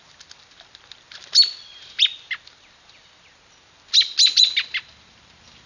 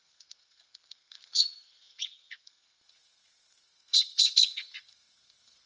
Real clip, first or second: first